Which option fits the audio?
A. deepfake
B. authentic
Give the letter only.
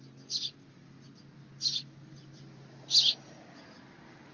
B